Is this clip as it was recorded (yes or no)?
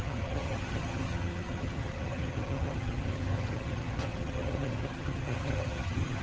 no